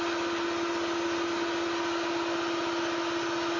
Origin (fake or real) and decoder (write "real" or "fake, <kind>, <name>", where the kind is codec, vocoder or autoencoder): real